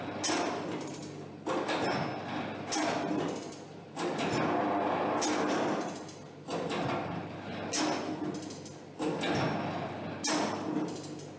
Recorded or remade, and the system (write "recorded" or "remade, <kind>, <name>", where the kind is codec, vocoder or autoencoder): recorded